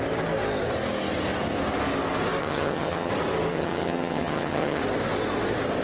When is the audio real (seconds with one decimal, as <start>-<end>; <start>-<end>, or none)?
0.0-2.4; 3.1-3.5; 4.8-5.8